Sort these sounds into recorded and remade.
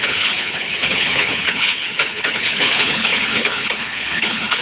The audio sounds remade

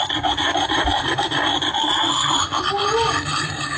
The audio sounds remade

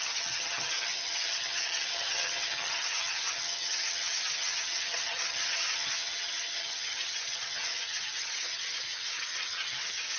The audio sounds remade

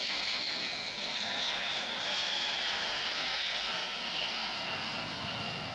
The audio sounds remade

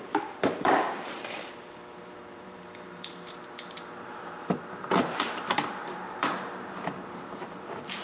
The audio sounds remade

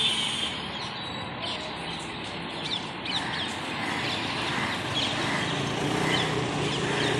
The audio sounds recorded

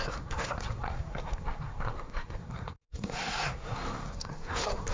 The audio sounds remade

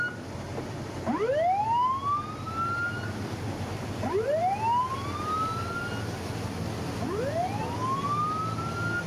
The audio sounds recorded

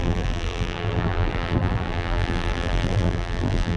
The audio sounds remade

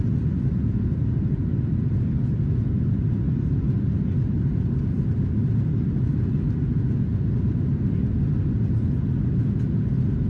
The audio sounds recorded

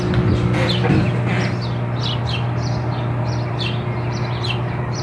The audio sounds recorded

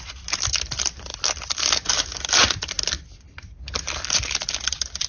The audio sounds recorded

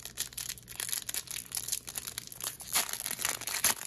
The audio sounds recorded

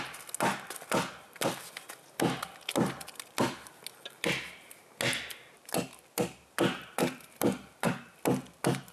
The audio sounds recorded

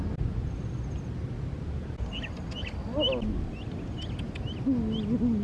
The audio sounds recorded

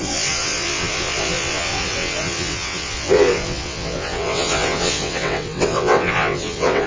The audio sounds remade